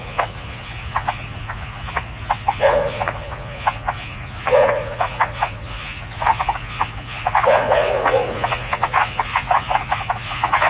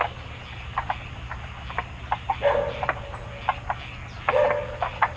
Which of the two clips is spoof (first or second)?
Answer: first